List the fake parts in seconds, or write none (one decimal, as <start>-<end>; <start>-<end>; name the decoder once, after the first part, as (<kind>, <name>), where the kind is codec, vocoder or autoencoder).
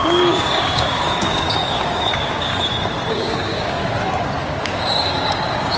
0.0-2.5 (codec, DAC); 3.1-3.8; 4.4-5.8